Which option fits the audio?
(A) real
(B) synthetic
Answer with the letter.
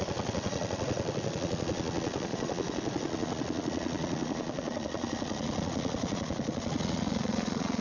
B